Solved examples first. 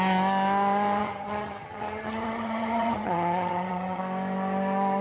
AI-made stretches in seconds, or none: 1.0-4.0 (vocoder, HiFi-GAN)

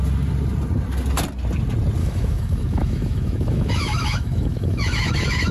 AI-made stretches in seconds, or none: 2.0-5.5 (autoencoder, DAC-VAE)

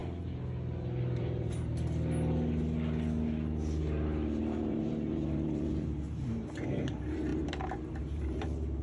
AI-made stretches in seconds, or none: 1.2-1.7 (vocoder, BigVGAN v2); 4.4-8.8

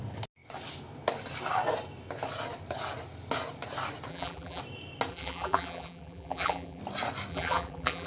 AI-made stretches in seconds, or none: 4.1-4.6 (vocoder, BigVGAN v2); 5.1-6.8; 7.3-8.1